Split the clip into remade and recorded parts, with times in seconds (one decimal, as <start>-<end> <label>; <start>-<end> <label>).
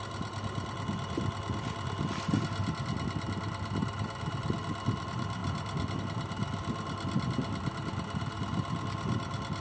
0.0-3.8 recorded; 3.8-4.5 remade; 4.5-5.4 recorded; 5.4-6.0 remade; 6.0-9.6 recorded